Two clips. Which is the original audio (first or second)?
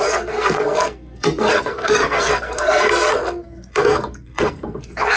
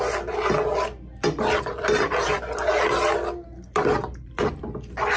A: second